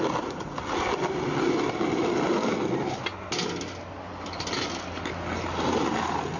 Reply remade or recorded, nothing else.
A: recorded